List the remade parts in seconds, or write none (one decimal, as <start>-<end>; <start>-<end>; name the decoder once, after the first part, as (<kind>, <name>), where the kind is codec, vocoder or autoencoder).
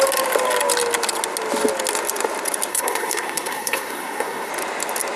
2.7-4.5 (codec, SNAC)